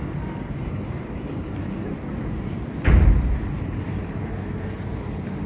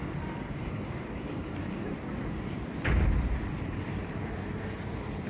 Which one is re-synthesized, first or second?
second